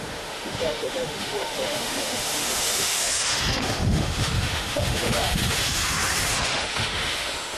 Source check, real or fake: fake